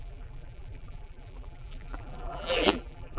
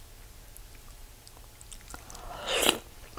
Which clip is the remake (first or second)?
first